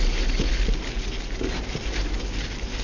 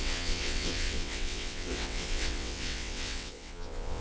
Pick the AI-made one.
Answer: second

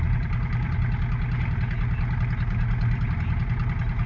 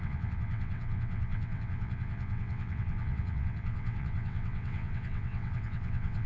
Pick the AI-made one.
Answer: second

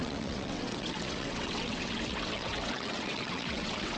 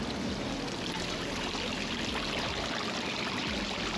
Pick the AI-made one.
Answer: first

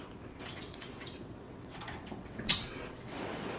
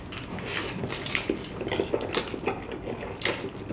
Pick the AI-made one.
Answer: first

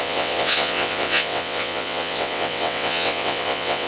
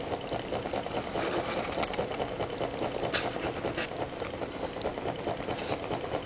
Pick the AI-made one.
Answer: first